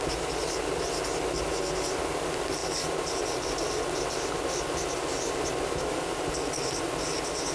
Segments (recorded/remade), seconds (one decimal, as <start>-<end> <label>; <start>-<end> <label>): 0.0-7.5 recorded

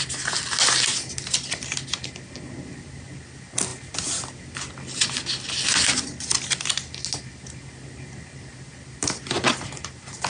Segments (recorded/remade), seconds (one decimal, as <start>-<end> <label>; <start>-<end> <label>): 0.0-10.3 recorded